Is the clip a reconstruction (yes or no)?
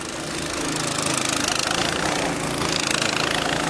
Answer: no